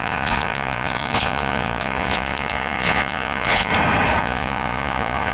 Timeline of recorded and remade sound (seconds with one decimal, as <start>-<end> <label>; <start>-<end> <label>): 0.0-3.7 remade; 3.7-4.2 recorded; 4.2-5.3 remade

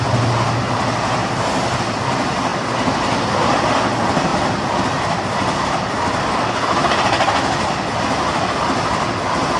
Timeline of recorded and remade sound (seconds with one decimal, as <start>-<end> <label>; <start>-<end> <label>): 0.0-1.2 recorded; 1.2-1.8 remade; 1.8-2.5 recorded; 2.5-3.2 remade; 3.2-9.6 recorded

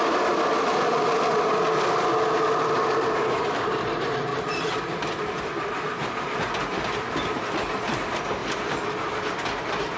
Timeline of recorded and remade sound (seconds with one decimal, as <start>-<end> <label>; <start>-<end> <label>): 0.0-4.3 recorded; 4.3-5.2 remade; 5.2-10.0 recorded

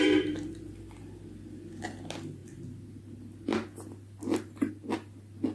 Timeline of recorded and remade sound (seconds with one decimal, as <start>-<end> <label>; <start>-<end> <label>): 0.0-5.5 recorded

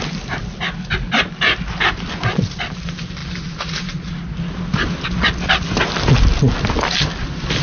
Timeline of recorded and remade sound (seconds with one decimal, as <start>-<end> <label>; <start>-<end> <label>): 0.0-7.6 recorded

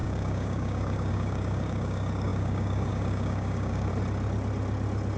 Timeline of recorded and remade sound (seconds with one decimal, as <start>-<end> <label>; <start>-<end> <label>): 0.0-3.9 remade; 3.9-5.2 recorded

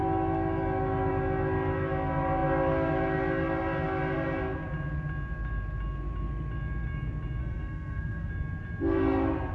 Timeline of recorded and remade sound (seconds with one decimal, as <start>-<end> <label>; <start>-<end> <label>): 0.0-7.4 recorded; 7.4-8.3 remade; 8.3-9.5 recorded